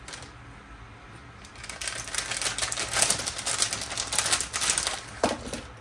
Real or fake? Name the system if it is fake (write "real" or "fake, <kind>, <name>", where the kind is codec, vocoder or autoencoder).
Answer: real